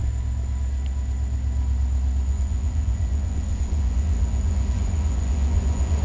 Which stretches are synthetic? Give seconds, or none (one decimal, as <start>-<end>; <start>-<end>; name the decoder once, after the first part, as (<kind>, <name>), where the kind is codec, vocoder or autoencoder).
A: 2.3-6.0 (vocoder, Vocos)

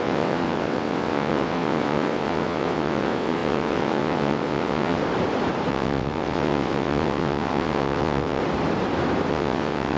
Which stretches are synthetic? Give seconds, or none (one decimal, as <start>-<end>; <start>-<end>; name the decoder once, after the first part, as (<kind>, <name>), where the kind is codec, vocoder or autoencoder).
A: 0.0-5.0 (vocoder, WaveNeXt); 5.7-8.4; 9.3-10.0

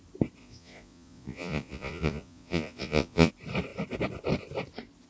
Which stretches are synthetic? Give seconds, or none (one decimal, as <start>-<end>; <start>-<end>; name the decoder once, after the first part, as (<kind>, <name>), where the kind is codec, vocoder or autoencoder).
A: 0.4-3.3 (vocoder, Vocos)

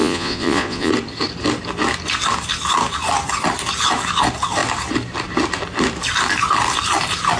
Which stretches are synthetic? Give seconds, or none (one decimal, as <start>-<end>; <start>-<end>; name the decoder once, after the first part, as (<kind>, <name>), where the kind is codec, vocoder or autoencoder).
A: 0.0-0.9 (vocoder, Vocos)

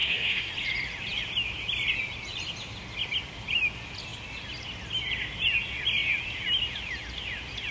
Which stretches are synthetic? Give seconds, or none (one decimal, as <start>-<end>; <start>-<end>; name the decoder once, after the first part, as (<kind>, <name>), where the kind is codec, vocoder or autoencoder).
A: 0.0-0.5 (codec, SNAC)

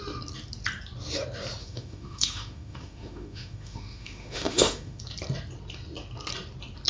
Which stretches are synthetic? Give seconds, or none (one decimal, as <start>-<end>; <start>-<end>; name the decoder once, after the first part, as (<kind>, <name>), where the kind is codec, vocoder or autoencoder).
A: 1.6-5.0 (autoencoder, DAC-VAE)

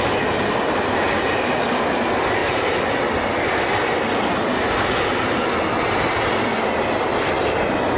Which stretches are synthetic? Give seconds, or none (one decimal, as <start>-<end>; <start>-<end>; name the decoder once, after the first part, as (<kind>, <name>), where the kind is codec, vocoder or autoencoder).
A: 2.4-3.0 (vocoder, BigVGAN v2)

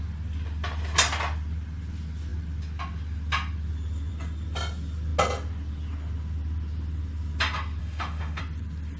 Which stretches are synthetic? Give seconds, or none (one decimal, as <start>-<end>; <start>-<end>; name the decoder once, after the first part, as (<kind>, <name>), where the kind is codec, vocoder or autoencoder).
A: 7.8-8.4 (autoencoder, DAC-VAE)